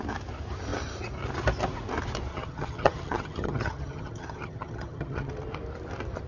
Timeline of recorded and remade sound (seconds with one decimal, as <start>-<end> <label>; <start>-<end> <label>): 0.0-2.3 recorded; 2.3-5.3 remade; 5.3-6.3 recorded